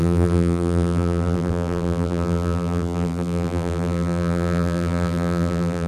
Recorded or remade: remade